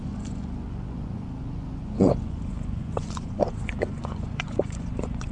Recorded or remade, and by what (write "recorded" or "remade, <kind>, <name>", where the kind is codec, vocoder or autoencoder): remade, vocoder, Vocos